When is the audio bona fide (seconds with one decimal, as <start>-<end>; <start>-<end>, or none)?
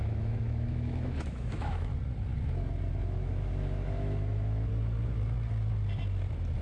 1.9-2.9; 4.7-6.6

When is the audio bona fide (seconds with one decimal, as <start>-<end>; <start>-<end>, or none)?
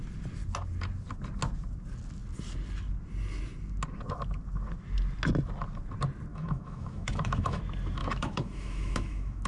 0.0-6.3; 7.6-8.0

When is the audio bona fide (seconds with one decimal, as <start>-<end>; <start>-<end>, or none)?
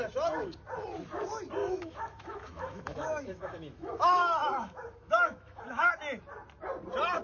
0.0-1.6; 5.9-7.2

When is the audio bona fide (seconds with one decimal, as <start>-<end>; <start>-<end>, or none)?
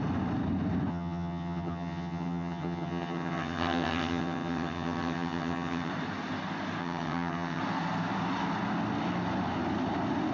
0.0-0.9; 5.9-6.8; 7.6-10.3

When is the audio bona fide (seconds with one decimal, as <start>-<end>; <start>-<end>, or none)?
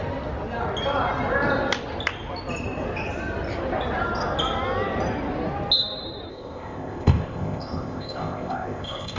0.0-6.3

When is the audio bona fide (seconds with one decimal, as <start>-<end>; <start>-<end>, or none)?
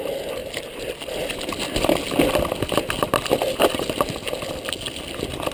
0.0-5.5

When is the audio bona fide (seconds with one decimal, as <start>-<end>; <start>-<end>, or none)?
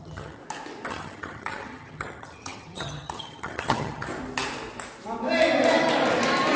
0.4-0.9; 4.1-6.6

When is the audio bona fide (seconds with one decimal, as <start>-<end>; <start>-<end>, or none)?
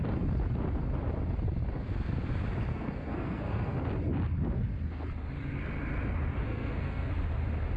0.0-2.7; 3.7-6.4; 7.1-7.8